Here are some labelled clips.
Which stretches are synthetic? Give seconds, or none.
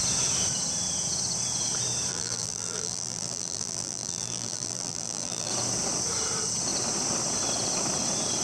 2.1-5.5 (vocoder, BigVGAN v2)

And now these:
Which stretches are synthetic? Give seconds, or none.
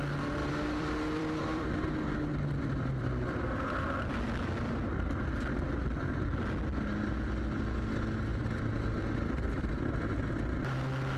0.4-1.7 (vocoder, BigVGAN v2); 2.3-4.7; 8.3-9.8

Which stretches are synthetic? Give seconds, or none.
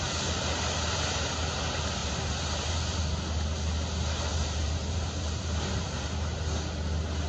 2.0-3.0 (vocoder, BigVGAN v2); 4.3-6.1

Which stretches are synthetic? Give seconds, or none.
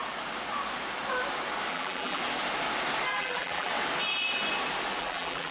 1.7-2.2 (vocoder, BigVGAN v2); 3.2-3.7; 5.0-5.5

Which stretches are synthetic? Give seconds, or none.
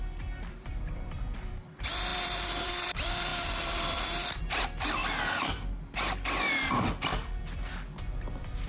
0.0-5.0 (vocoder, BigVGAN v2); 6.7-8.7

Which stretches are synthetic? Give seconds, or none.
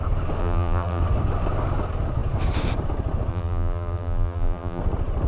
0.4-1.0 (vocoder, BigVGAN v2); 3.3-4.8